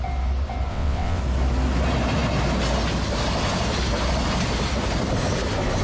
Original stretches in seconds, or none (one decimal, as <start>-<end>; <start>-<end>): 0.0-0.7; 1.2-5.8